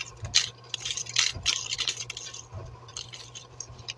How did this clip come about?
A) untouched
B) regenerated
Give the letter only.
A